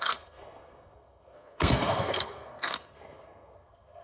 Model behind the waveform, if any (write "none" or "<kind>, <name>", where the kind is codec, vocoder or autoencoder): codec, SNAC